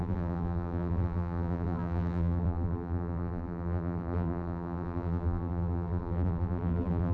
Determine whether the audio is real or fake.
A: fake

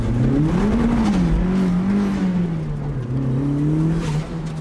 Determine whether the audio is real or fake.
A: real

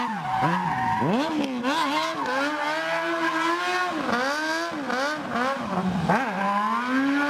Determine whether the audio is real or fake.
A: real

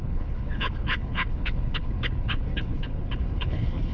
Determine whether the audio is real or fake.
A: fake